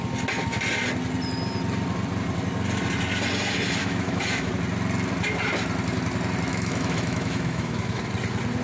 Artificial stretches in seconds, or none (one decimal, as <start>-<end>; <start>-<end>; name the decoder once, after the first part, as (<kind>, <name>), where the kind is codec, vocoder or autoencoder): 3.8-4.5 (autoencoder, DAC-VAE); 6.5-8.0

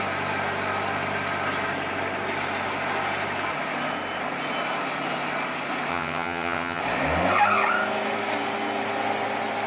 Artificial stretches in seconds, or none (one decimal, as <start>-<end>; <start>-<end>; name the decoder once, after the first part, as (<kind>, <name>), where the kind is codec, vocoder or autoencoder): 5.9-6.8 (vocoder, HiFi-GAN)

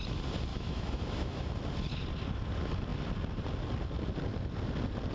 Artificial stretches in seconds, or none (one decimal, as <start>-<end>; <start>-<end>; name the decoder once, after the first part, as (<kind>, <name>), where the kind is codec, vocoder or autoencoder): 0.5-1.5 (autoencoder, DAC-VAE)

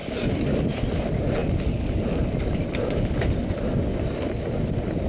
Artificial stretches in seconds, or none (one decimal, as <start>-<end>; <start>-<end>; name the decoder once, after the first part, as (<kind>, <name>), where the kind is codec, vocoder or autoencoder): none

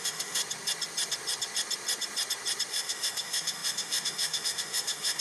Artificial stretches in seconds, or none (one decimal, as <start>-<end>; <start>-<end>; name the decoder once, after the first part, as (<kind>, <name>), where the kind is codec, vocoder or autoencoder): 0.0-0.4 (autoencoder, DAC-VAE); 2.7-5.2

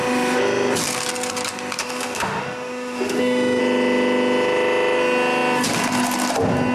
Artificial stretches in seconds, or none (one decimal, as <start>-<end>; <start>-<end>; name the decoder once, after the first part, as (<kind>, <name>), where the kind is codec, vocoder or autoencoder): 1.8-3.6 (autoencoder, DAC-VAE)

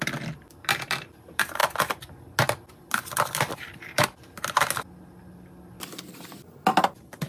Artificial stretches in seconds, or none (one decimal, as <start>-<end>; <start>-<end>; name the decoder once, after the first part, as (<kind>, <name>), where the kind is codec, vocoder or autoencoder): none